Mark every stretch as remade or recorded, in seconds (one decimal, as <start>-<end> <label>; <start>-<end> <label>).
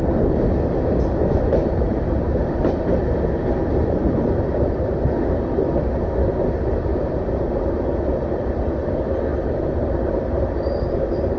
0.0-1.6 recorded; 1.6-3.0 remade; 3.0-6.9 recorded; 6.9-7.5 remade; 7.5-9.3 recorded; 9.3-11.4 remade